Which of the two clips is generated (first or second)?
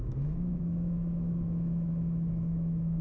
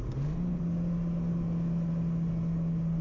first